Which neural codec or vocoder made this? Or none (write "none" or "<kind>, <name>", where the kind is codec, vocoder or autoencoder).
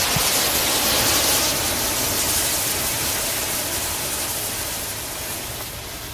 none